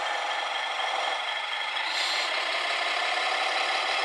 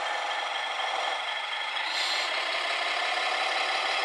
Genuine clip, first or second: second